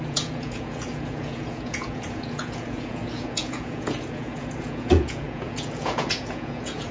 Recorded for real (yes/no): no